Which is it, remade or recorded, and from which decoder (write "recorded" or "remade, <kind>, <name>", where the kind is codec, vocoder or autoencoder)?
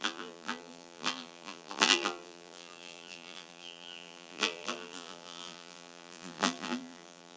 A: remade, vocoder, BigVGAN v2